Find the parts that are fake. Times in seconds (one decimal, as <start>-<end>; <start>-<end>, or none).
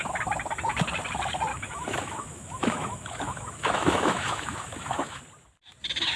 1.5-5.2